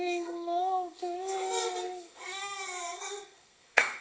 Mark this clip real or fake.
fake